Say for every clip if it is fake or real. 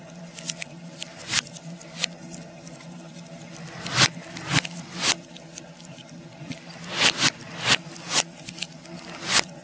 fake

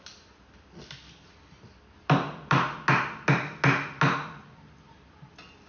real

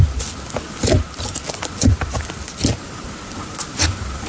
real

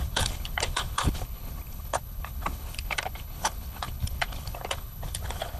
fake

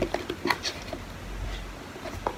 real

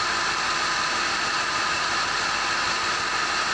real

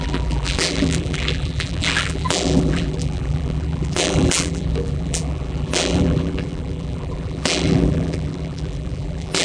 fake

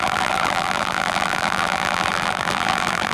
fake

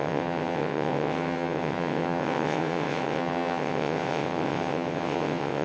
fake